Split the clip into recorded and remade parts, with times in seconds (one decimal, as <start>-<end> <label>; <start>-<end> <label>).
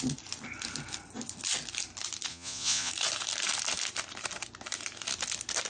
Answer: 0.0-2.3 recorded; 2.3-2.9 remade; 2.9-5.7 recorded